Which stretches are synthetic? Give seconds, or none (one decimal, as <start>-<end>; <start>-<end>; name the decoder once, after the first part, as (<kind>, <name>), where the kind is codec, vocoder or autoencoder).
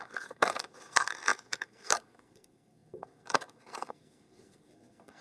0.0-5.2 (codec, SNAC)